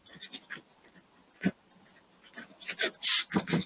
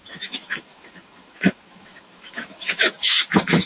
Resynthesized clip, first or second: second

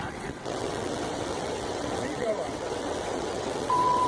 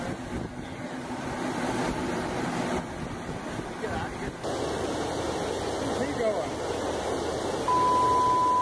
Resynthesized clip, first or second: first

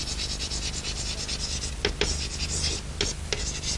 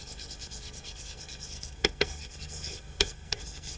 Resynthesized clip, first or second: second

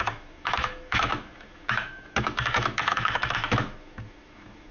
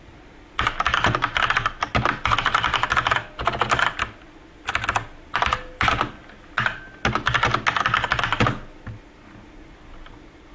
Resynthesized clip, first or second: first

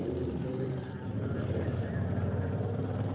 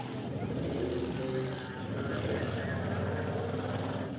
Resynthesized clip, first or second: first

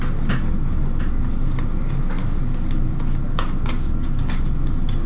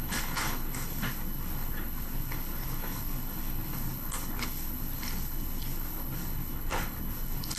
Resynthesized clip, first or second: second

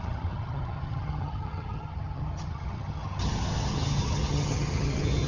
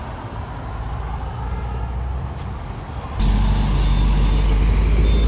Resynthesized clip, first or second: first